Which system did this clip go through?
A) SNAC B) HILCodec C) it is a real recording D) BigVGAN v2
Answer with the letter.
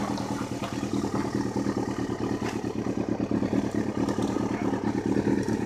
C